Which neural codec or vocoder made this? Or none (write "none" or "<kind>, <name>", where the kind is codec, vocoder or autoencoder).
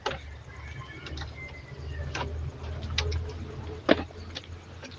none